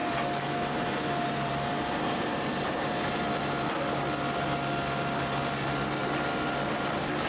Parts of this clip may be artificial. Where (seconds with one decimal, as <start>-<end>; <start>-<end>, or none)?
none